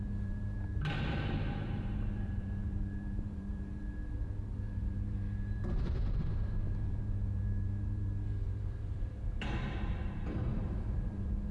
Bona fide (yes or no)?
no